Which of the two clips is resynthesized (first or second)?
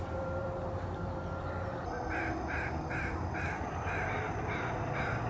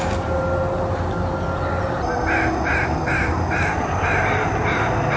first